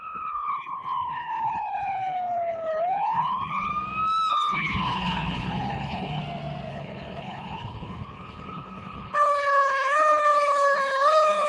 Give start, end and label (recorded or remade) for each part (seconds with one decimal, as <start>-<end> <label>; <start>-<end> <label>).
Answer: 0.0-3.7 remade; 3.7-4.3 recorded; 4.3-6.2 remade; 6.2-6.7 recorded; 6.7-11.5 remade